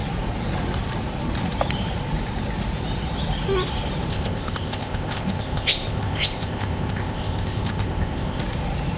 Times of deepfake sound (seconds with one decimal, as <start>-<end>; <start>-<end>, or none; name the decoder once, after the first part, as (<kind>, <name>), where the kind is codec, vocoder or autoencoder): 4.1-8.4 (codec, ZipCodec)